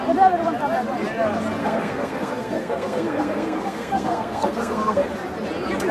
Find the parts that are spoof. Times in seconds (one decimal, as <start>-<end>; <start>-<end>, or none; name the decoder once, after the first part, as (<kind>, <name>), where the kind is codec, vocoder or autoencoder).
1.6-5.1 (codec, SNAC)